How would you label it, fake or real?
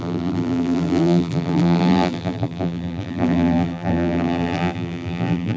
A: fake